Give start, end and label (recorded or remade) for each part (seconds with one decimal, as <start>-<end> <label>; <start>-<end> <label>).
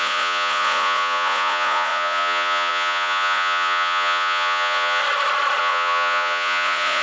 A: 0.0-5.0 remade; 5.0-5.6 recorded; 5.6-7.0 remade